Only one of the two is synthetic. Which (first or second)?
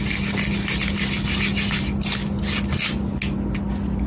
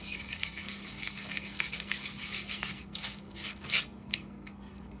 second